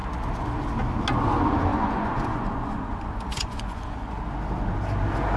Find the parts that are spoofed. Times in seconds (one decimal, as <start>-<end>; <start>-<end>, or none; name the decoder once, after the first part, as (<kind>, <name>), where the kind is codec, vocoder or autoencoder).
1.7-4.2 (vocoder, Vocos)